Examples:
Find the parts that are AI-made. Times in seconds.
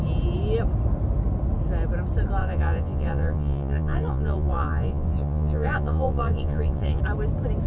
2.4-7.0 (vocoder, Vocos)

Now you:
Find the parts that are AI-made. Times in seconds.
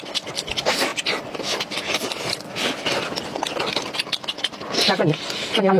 none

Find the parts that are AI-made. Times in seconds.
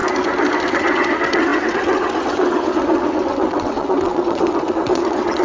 0.7-5.4 (vocoder, WaveNeXt)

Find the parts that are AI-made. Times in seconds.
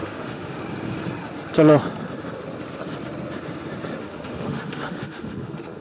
0.0-0.6 (autoencoder, DAC-VAE); 4.0-5.8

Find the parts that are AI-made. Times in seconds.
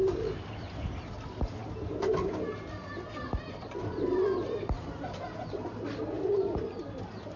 none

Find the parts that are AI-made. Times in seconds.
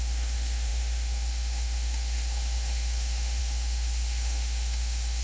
0.0-5.2 (autoencoder, DAC-VAE)